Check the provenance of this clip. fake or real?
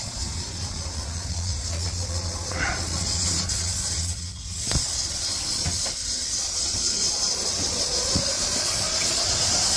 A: fake